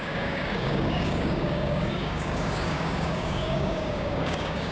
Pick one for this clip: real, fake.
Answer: fake